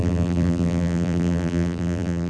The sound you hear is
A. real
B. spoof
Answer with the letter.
B